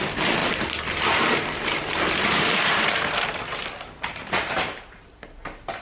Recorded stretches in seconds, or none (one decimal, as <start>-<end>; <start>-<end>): 0.0-0.4; 3.1-4.2; 5.1-5.8